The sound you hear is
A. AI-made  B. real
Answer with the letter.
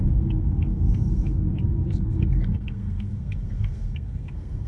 A